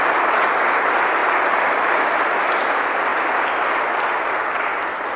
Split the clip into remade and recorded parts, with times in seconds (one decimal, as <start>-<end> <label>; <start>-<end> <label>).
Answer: 0.0-5.2 recorded